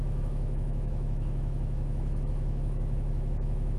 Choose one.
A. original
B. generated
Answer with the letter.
B